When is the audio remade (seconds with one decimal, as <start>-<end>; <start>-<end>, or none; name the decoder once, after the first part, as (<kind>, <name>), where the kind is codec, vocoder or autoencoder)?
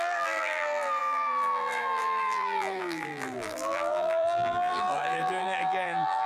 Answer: 0.0-6.3 (vocoder, BigVGAN v2)